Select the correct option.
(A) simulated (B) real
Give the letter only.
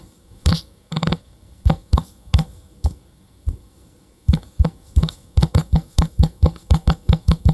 A